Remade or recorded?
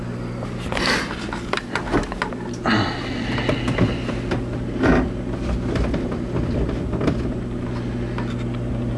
recorded